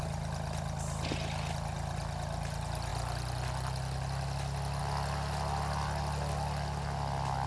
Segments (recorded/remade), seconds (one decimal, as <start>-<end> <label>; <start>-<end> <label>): 0.0-7.5 recorded